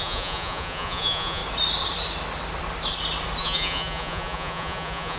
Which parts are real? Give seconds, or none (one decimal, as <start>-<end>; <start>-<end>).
1.4-3.4